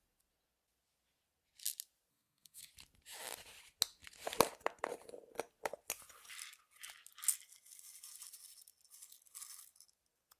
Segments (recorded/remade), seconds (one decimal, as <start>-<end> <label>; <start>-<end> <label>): 0.0-2.1 recorded; 2.1-2.7 remade; 2.7-10.4 recorded